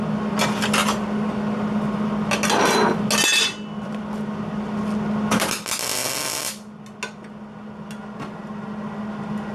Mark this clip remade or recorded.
recorded